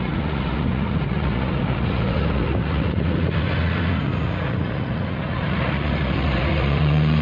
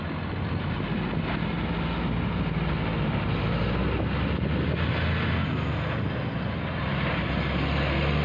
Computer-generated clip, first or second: first